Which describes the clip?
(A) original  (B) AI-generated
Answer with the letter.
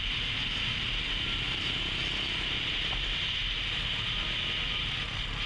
A